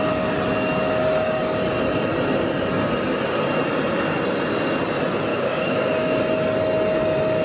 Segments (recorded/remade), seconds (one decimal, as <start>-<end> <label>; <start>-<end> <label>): 0.0-5.3 recorded; 5.3-6.2 remade; 6.2-7.4 recorded